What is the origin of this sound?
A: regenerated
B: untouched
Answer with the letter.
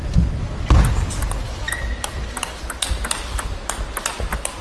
B